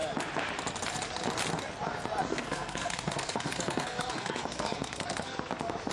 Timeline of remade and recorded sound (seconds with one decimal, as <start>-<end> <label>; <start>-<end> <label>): 0.0-2.3 recorded; 2.3-5.5 remade; 5.5-5.9 recorded